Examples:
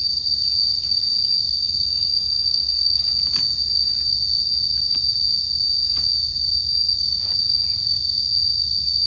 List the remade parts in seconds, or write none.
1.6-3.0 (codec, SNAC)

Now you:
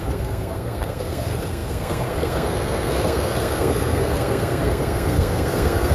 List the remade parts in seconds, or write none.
0.0-5.9 (codec, SNAC)

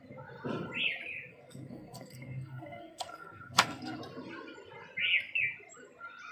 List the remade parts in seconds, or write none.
1.3-4.0 (codec, SNAC)

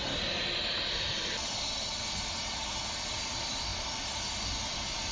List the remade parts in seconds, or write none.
none